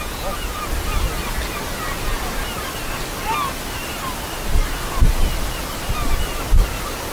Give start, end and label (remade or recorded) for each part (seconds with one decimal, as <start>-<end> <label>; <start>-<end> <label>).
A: 0.0-0.7 remade; 0.7-7.1 recorded